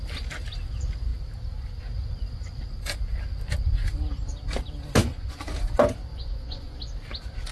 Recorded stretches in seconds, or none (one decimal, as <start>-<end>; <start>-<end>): 0.0-5.0; 5.5-6.1; 6.8-7.5